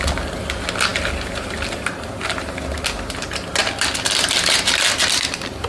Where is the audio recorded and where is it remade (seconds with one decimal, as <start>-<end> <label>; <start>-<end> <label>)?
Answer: 0.0-5.7 recorded